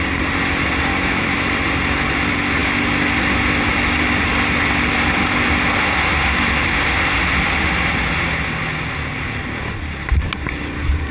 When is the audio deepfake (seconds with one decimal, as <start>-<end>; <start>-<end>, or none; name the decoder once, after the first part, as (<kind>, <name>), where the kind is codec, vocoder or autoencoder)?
0.9-1.5 (autoencoder, DAC-VAE)